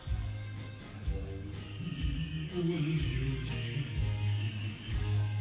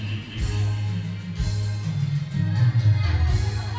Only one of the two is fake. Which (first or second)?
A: first